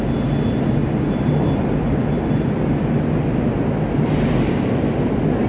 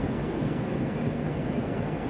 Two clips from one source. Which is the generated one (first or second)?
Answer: second